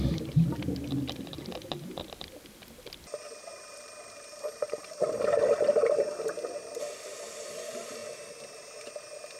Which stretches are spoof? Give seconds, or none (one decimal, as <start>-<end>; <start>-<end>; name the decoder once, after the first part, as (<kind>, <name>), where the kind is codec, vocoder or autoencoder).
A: 3.5-6.4 (vocoder, BigVGAN v2)